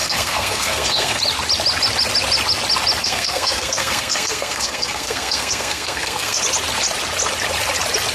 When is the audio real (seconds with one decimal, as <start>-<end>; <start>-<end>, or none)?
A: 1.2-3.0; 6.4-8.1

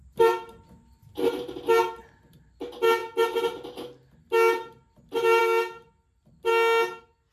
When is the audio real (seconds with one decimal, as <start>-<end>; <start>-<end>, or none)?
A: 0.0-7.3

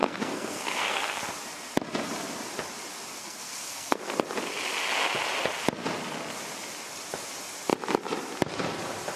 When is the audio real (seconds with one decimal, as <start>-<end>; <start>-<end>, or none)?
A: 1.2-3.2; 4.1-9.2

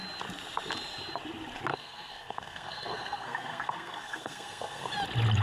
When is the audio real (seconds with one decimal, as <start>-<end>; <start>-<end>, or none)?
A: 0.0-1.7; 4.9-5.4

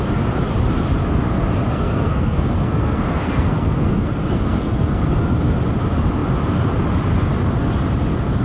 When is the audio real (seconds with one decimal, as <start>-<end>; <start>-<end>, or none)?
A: 0.0-1.7; 5.1-8.4

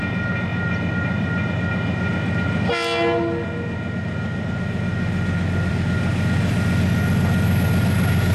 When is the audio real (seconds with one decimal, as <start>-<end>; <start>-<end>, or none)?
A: 0.0-8.3

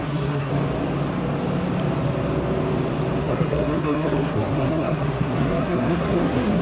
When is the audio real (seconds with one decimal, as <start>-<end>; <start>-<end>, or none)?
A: 0.5-3.2

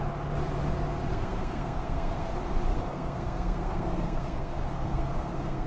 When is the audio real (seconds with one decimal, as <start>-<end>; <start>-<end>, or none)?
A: 0.0-1.1; 2.3-2.7